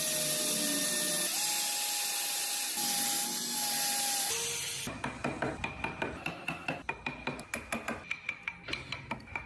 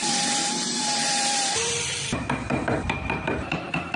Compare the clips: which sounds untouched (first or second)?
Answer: first